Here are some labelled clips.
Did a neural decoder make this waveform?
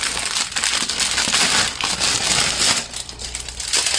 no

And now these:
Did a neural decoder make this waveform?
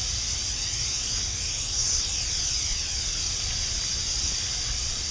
no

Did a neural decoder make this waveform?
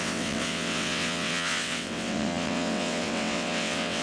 yes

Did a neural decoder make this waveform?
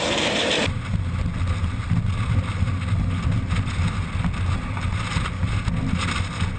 no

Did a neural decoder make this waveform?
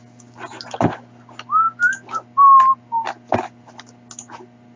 no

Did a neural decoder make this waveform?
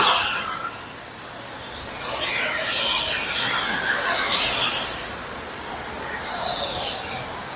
no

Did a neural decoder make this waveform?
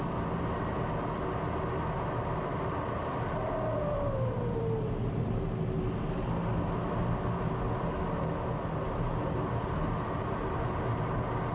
no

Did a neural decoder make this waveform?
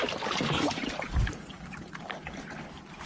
no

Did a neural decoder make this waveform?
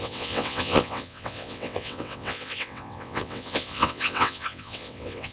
yes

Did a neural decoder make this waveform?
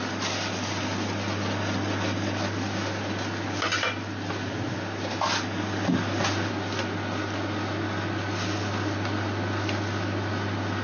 no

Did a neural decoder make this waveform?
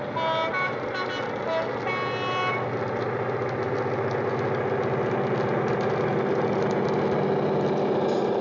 no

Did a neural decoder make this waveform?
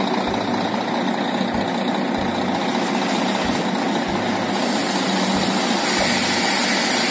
no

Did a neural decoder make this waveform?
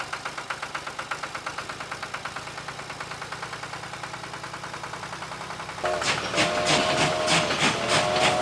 no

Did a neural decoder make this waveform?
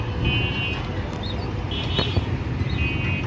no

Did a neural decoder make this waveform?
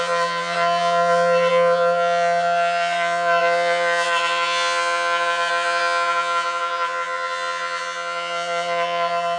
yes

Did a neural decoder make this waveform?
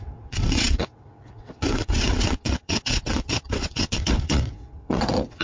yes